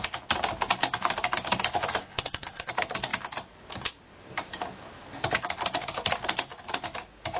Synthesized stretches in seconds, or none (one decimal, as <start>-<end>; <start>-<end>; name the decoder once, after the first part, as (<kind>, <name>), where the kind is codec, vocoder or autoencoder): 2.0-2.7 (codec, SNAC)